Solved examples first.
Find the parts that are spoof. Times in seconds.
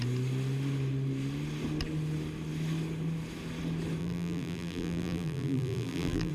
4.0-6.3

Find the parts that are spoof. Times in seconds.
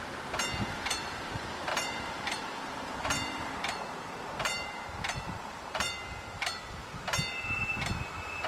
1.7-5.9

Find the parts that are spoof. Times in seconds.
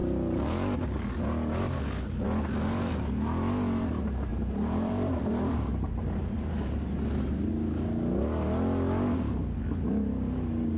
4.3-7.5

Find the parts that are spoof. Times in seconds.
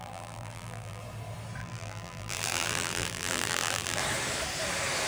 0.0-1.0; 1.6-4.0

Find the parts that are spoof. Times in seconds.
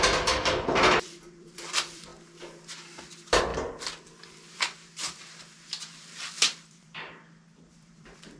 0.0-2.1; 3.0-8.4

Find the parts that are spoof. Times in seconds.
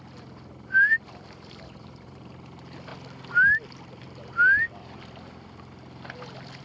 0.5-2.3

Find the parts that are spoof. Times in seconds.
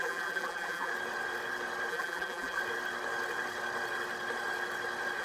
0.0-0.9; 1.9-2.6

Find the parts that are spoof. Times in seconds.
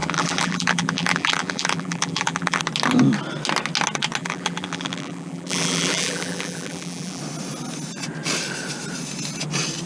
0.0-2.6; 4.2-7.2